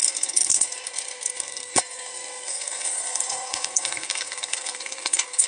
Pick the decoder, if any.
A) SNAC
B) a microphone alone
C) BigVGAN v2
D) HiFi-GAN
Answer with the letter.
A